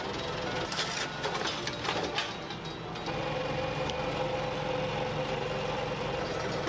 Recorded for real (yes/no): yes